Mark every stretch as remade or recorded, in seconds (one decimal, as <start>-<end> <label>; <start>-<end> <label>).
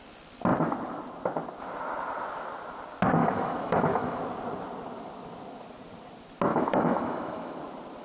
0.0-3.2 recorded; 3.2-4.2 remade; 4.2-6.5 recorded; 6.5-7.6 remade; 7.6-8.0 recorded